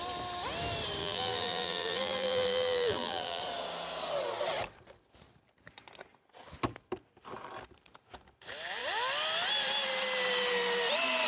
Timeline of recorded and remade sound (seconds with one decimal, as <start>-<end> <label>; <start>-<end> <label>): 0.0-1.0 recorded; 1.0-3.4 remade; 3.4-11.3 recorded